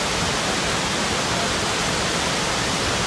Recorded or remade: recorded